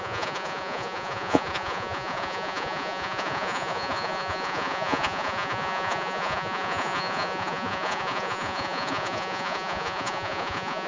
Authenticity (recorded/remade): remade